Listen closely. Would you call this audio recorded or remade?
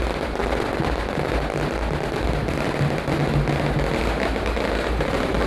recorded